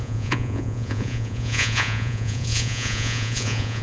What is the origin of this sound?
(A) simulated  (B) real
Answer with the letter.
A